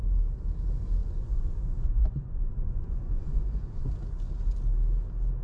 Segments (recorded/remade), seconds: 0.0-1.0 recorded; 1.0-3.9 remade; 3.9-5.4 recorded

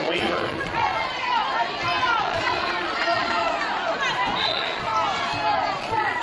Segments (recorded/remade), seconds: 0.0-1.4 remade; 1.4-2.0 recorded; 2.0-3.4 remade; 3.4-4.4 recorded; 4.4-4.9 remade; 4.9-5.8 recorded; 5.8-6.2 remade

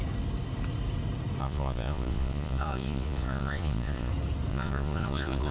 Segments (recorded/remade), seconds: 0.0-1.4 recorded; 1.4-4.1 remade; 4.1-4.5 recorded; 4.5-5.5 remade